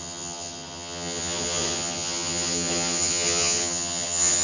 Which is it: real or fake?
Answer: fake